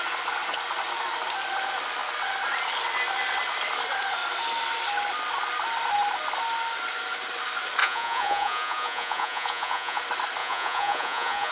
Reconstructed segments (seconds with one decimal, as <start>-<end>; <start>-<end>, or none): 7.8-10.0; 10.4-11.5